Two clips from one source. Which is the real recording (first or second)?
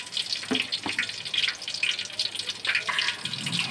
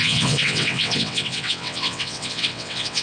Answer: first